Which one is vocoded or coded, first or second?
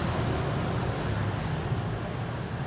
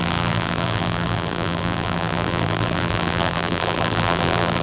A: second